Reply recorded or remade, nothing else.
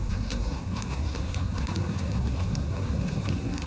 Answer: remade